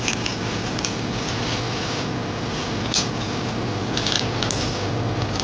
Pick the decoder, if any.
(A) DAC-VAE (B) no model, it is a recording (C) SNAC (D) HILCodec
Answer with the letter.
B